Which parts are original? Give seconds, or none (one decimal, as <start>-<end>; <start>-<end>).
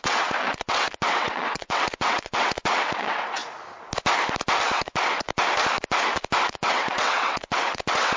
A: 3.4-4.6; 5.3-6.4